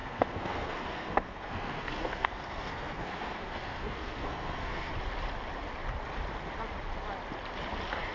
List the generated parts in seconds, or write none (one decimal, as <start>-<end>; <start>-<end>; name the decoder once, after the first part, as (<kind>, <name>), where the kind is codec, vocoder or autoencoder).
0.0-4.9 (codec, SNAC)